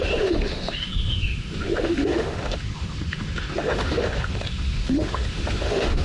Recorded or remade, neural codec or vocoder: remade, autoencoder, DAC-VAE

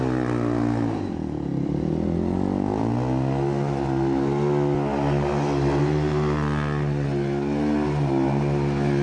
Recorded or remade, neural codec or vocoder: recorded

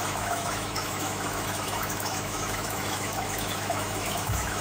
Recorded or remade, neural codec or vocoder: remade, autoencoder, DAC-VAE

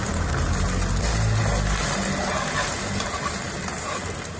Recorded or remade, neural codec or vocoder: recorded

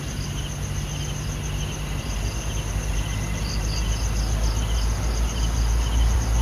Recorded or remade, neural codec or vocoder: recorded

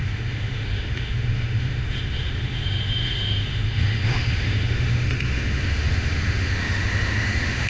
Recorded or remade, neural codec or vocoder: remade, autoencoder, DAC-VAE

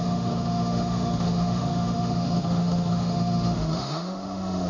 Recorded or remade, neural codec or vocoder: remade, autoencoder, DAC-VAE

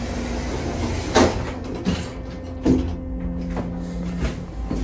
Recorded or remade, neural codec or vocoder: recorded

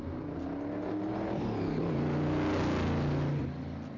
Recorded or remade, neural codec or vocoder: recorded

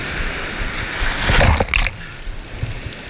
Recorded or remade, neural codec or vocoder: recorded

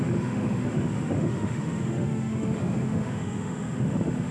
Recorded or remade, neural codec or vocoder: remade, autoencoder, DAC-VAE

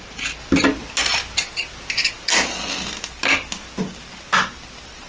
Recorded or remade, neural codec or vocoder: recorded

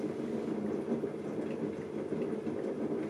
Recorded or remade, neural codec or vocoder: recorded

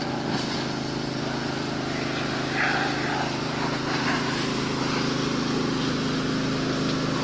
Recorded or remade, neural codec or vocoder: recorded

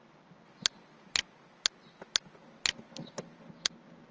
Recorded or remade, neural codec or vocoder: recorded